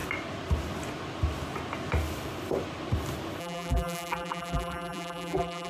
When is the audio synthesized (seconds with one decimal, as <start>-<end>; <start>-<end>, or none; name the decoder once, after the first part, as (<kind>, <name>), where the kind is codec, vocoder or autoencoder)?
3.4-5.7 (vocoder, BigVGAN v2)